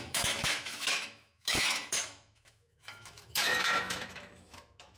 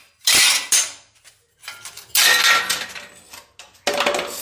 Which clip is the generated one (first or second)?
first